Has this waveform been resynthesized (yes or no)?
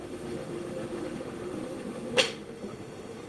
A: yes